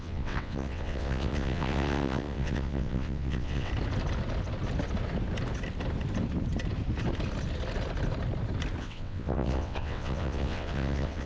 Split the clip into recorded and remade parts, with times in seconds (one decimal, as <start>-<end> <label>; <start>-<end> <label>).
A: 0.0-3.7 remade; 3.7-8.8 recorded; 8.8-11.3 remade